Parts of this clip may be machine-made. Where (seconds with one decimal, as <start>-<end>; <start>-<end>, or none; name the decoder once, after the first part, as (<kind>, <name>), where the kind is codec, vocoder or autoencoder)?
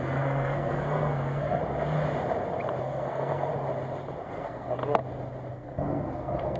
0.0-1.6 (codec, SNAC); 2.8-3.5; 4.2-4.8; 5.5-6.6